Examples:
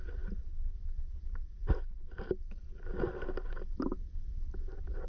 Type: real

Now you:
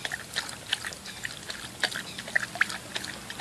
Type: real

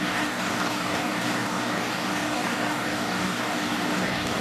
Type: fake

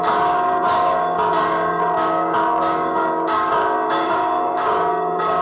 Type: fake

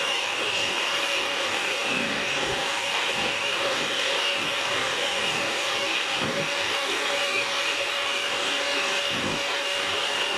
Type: fake